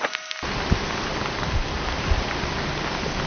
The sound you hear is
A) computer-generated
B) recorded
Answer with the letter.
B